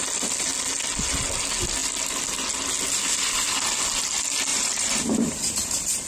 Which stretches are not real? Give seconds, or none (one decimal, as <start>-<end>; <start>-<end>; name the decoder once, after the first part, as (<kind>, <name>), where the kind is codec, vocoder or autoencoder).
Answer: 4.5-6.1 (vocoder, BigVGAN v2)